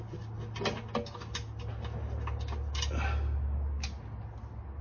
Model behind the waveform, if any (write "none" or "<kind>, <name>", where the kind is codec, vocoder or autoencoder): none